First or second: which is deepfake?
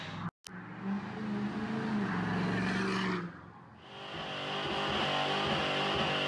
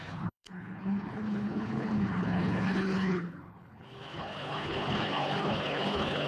second